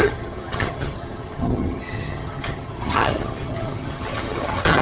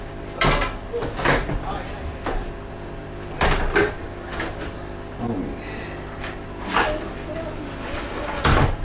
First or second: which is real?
second